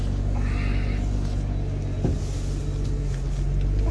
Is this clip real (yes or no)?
yes